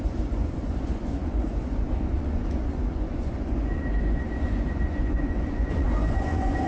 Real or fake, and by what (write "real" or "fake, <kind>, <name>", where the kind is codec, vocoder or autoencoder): fake, vocoder, Vocos